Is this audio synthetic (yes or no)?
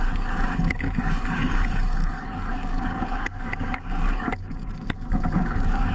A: yes